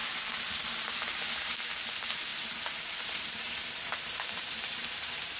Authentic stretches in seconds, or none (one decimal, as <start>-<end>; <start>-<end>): none